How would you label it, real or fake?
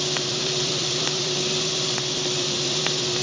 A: fake